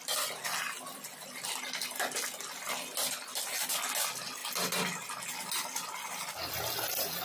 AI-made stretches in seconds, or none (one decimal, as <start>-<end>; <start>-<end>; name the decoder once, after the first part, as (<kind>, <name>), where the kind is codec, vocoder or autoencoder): none